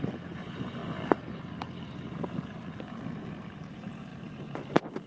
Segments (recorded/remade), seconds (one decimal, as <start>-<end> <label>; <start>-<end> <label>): 0.0-5.1 remade